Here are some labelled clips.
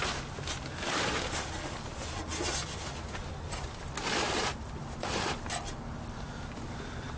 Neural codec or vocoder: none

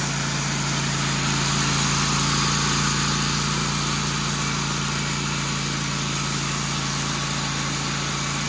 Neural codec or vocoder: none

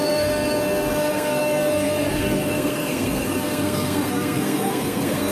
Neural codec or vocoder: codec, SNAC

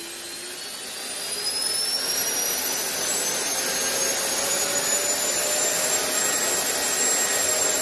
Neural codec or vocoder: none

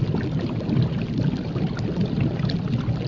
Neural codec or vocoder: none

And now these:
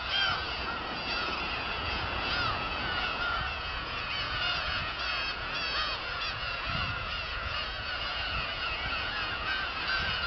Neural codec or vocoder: vocoder, Vocos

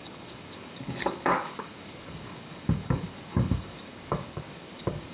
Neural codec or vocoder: codec, DAC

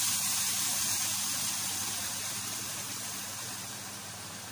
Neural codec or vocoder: vocoder, BigVGAN v2